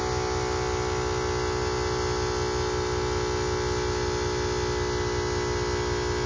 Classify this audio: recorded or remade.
recorded